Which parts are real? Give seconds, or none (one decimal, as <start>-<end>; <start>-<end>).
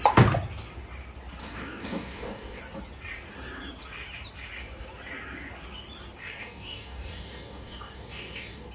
0.0-1.4; 2.6-6.2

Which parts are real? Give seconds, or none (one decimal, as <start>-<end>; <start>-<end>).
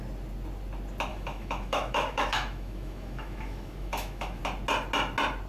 0.0-1.1; 4.4-5.5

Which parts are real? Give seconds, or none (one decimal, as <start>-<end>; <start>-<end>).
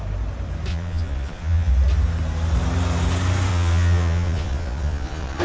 0.0-0.7; 1.7-3.5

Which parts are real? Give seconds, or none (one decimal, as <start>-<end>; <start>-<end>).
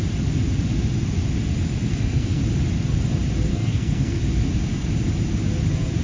0.0-1.9; 2.4-3.5; 4.2-6.0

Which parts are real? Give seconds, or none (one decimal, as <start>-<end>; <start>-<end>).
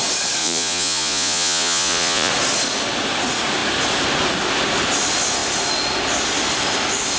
0.0-0.4; 2.3-7.2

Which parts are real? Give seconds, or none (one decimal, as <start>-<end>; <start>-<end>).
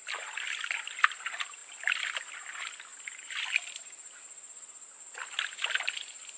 0.0-6.4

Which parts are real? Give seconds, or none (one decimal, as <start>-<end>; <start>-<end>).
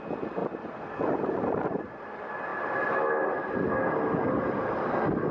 0.0-5.3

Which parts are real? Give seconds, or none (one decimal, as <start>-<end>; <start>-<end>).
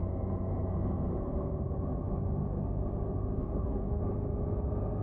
0.0-3.4; 4.0-5.0